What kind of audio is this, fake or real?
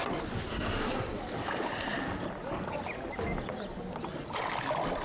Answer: real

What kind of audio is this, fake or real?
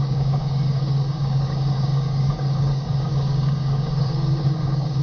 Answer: fake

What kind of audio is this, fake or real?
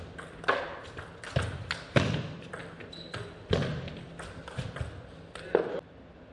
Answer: real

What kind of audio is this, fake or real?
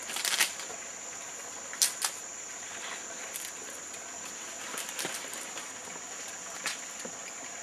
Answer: real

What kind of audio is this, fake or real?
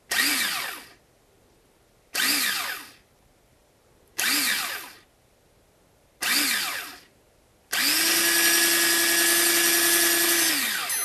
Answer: real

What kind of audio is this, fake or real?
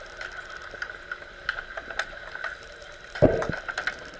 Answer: real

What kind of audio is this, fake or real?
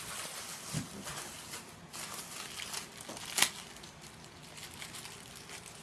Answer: real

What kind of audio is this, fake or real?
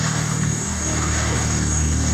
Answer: fake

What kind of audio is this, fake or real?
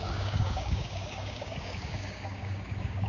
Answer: fake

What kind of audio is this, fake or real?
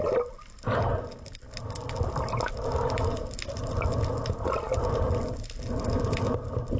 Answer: real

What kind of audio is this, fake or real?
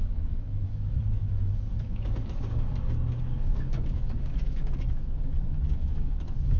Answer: fake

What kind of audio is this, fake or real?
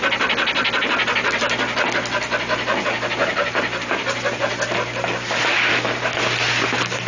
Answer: real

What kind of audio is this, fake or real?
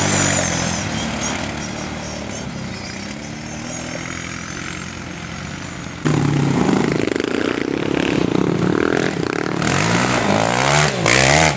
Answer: real